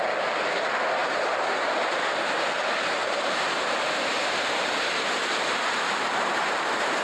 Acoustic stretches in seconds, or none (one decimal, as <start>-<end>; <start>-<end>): 0.0-1.0; 1.5-3.0; 6.5-7.0